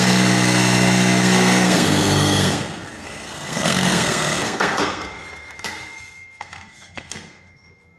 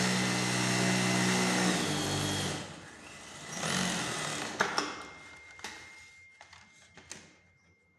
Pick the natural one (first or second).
second